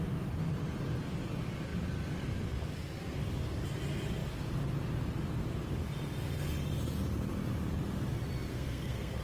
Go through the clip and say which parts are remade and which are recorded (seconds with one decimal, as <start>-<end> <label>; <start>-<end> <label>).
0.0-8.5 recorded; 8.5-9.2 remade